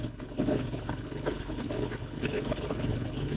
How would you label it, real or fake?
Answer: fake